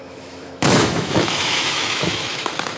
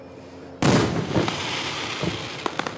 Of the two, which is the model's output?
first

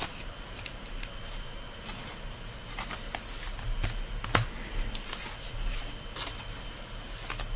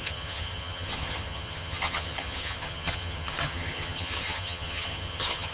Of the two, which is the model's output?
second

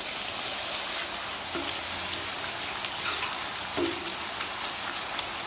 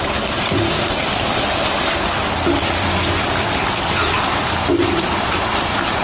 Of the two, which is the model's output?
second